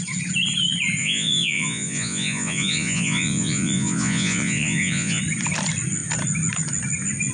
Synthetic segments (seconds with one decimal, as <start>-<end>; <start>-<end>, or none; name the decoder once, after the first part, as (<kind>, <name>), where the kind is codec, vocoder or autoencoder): 1.0-5.2 (vocoder, Vocos)